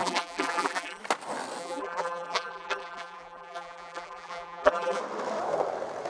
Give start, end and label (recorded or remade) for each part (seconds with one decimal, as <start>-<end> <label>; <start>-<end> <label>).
0.0-1.0 remade; 1.0-1.6 recorded; 1.6-5.0 remade; 5.0-6.1 recorded